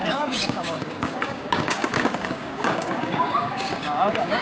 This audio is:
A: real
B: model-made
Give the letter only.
B